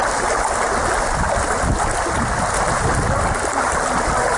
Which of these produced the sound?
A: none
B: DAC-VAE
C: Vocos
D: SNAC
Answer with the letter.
A